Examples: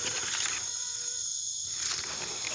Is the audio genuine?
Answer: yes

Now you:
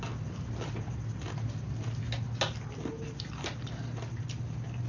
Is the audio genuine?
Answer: yes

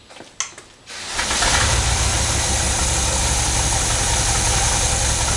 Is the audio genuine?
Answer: yes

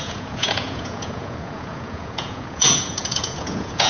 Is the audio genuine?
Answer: no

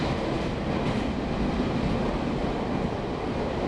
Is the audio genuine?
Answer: yes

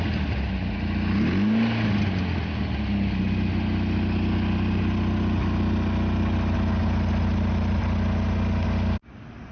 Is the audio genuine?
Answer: yes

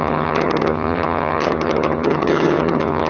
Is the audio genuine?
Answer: no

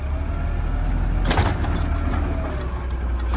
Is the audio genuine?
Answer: yes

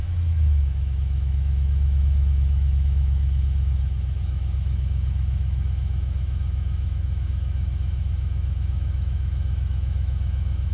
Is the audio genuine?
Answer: no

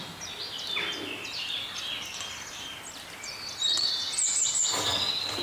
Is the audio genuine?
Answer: yes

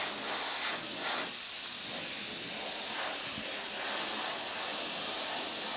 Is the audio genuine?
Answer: yes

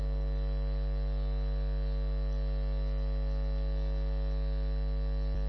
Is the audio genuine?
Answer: yes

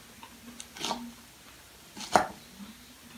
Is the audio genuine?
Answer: yes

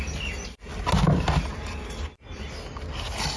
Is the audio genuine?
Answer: yes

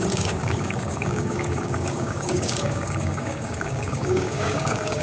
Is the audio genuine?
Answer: no